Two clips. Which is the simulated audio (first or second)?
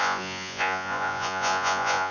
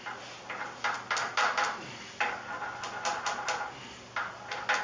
first